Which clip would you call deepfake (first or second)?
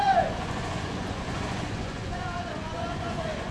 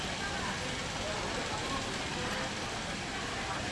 first